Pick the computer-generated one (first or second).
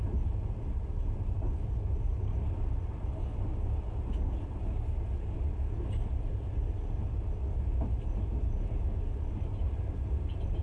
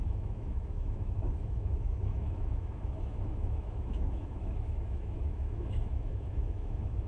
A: second